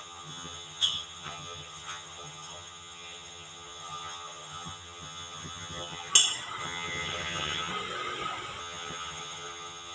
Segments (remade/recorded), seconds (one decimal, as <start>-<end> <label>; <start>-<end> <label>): 0.0-6.1 remade; 6.1-6.6 recorded; 6.6-7.7 remade; 7.7-8.6 recorded; 8.6-9.9 remade